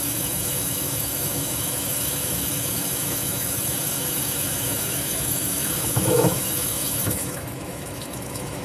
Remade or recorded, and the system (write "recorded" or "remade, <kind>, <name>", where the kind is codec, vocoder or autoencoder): remade, autoencoder, DAC-VAE